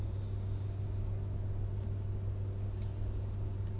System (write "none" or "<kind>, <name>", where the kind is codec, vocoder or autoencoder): none